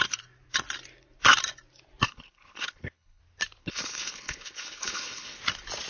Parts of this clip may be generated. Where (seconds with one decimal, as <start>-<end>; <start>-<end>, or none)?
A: 2.1-3.2; 3.6-5.4